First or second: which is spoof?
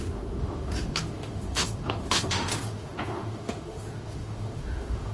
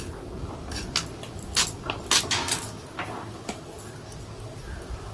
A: first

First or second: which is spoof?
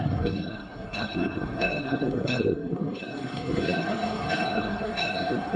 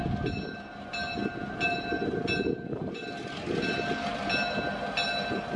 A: first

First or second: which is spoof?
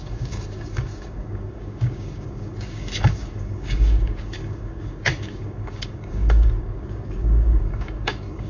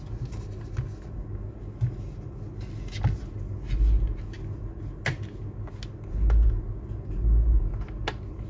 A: first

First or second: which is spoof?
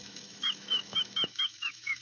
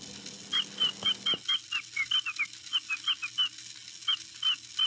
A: first